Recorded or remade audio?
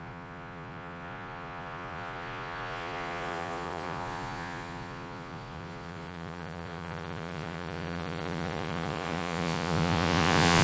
remade